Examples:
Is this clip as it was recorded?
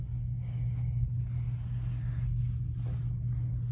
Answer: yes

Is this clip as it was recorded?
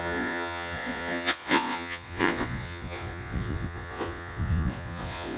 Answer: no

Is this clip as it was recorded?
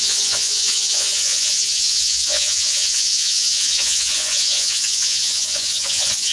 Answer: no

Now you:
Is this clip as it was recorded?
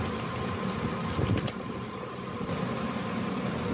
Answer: yes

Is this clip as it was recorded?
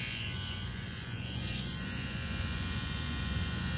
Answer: no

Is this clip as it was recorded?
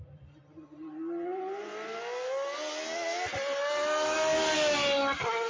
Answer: yes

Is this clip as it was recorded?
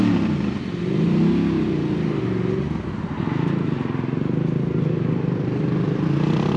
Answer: yes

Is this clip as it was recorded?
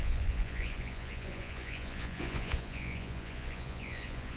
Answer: no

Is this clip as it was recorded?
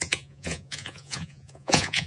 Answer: no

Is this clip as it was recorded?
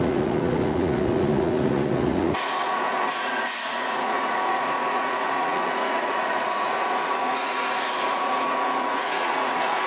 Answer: no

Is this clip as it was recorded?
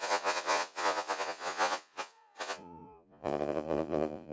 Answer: no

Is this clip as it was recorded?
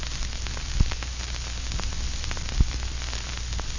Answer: yes